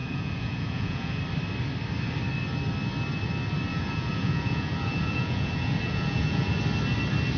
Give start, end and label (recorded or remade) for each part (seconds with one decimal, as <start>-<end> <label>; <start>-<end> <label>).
0.0-1.2 remade; 1.2-3.7 recorded; 3.7-6.6 remade; 6.6-7.4 recorded